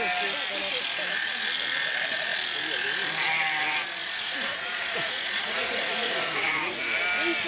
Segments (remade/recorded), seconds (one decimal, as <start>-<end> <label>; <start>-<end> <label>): 0.0-4.0 recorded; 4.0-6.8 remade; 6.8-7.5 recorded